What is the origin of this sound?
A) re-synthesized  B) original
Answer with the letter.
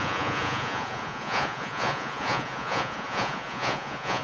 A